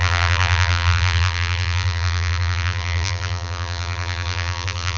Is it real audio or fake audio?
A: fake